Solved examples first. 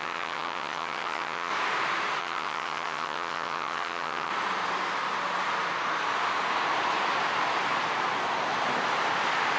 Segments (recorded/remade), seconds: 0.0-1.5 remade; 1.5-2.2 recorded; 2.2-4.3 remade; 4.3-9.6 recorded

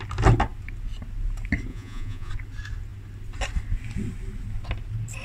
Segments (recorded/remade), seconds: 0.0-1.7 recorded; 1.7-2.3 remade; 2.3-5.2 recorded